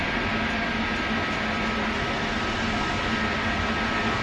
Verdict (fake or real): real